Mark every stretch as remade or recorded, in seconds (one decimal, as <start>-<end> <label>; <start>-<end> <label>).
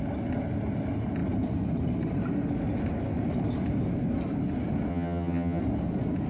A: 0.0-4.9 recorded; 4.9-5.6 remade; 5.6-6.3 recorded